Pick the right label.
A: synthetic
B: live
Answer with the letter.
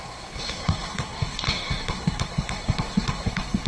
A